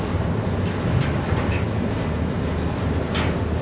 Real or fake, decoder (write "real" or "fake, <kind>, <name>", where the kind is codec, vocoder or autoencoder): real